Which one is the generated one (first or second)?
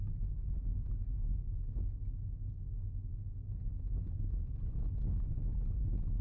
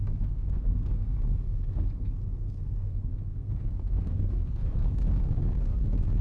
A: second